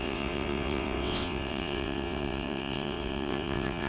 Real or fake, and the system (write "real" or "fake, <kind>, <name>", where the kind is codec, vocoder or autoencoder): fake, vocoder, WaveNeXt